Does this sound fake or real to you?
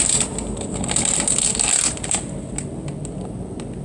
real